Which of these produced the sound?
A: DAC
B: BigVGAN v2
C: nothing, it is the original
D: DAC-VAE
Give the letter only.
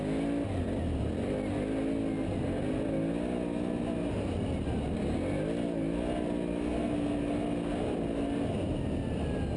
C